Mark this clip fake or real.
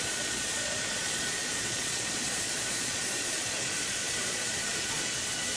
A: fake